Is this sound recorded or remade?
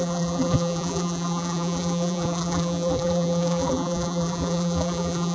remade